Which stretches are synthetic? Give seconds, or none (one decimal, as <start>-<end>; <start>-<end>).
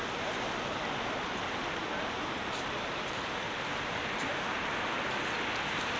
1.6-5.2